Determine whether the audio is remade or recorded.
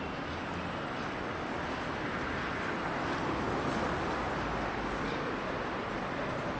recorded